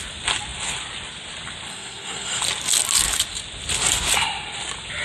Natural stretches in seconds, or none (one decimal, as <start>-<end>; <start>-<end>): 0.0-1.7; 2.4-5.0